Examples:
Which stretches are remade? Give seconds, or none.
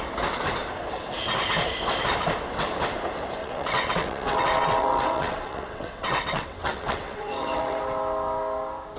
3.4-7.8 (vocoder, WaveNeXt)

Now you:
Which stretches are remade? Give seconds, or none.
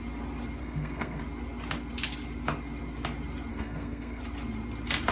0.6-1.2 (codec, SNAC); 3.5-4.2